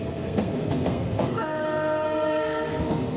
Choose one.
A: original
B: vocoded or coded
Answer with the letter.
B